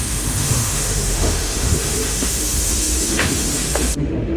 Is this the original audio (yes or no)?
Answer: no